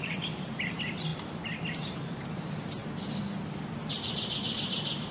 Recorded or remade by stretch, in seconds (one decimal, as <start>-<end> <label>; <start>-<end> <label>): 0.0-1.1 remade; 1.1-1.7 recorded; 1.7-2.8 remade; 2.8-3.9 recorded; 3.9-5.1 remade